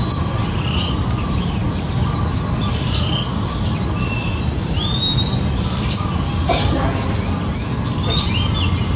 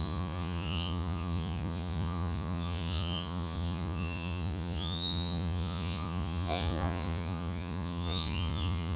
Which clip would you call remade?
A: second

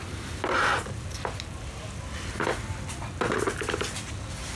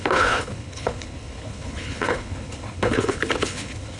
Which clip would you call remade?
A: second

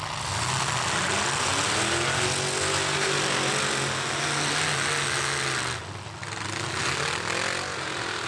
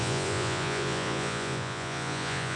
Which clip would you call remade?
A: second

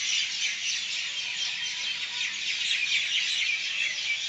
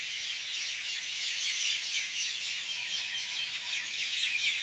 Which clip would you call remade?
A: second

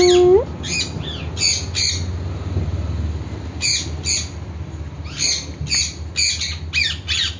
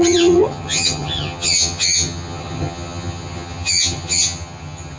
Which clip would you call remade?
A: second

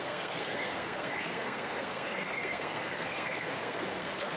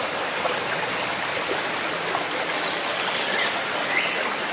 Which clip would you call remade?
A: first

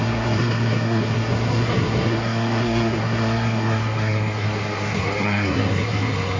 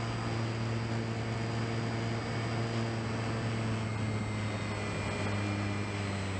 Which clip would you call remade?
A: first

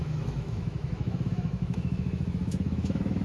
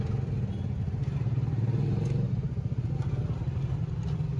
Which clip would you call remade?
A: first